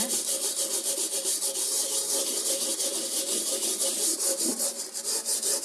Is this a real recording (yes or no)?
yes